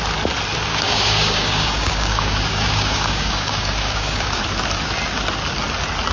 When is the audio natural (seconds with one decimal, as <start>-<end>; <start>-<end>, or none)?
0.0-0.7; 4.4-6.1